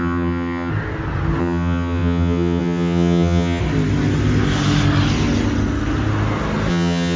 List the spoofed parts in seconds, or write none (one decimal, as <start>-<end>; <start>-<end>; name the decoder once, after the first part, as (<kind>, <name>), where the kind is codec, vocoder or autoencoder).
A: 0.0-0.7 (vocoder, HiFi-GAN); 1.4-3.6; 6.7-7.2